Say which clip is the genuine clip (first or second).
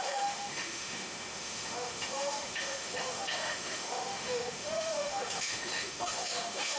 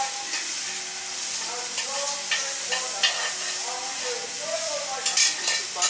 second